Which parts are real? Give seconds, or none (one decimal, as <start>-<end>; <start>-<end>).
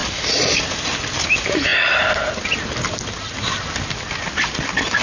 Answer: 0.6-5.0